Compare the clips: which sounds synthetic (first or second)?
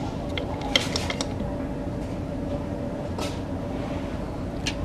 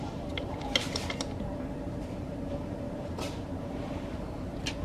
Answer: second